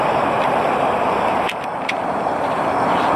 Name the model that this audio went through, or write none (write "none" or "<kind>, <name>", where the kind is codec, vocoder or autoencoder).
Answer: vocoder, BigVGAN v2